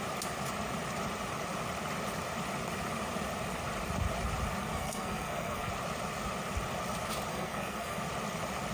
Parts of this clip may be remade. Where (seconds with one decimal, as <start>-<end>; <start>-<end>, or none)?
4.6-5.7; 7.3-8.0